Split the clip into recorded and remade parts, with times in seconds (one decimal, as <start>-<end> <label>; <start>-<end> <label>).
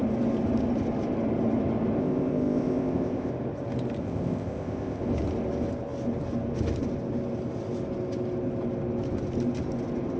0.0-2.0 recorded; 2.0-3.3 remade; 3.3-4.0 recorded; 4.0-5.0 remade; 5.0-10.2 recorded